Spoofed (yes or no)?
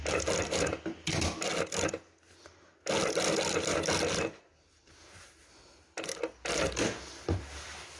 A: no